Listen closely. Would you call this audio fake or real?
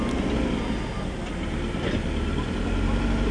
real